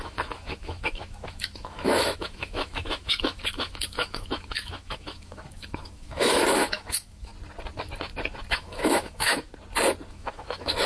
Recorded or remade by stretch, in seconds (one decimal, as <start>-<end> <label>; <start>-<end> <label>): 0.0-7.3 remade; 7.3-8.5 recorded; 8.5-9.5 remade; 9.5-10.1 recorded; 10.1-10.9 remade